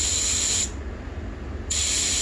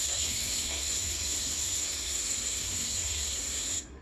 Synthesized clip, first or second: second